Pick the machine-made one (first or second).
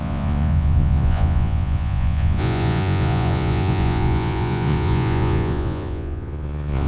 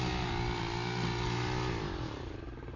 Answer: first